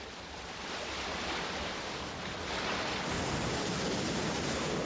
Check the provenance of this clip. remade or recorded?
recorded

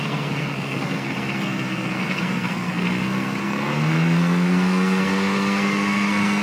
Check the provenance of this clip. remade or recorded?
remade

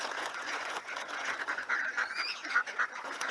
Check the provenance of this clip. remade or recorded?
remade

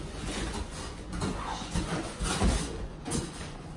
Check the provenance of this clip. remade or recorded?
remade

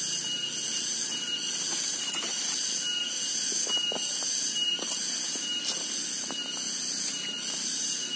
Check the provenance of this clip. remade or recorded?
recorded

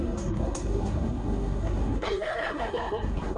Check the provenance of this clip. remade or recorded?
remade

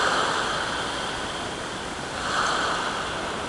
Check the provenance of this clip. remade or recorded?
recorded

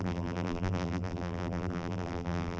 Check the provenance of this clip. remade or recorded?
remade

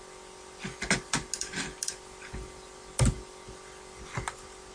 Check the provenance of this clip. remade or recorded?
recorded